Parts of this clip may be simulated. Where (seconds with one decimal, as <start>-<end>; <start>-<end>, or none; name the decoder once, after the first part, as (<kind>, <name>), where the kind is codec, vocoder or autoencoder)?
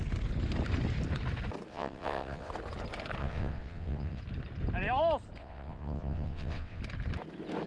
1.7-2.5 (vocoder, WaveNeXt); 3.2-4.2; 5.4-6.8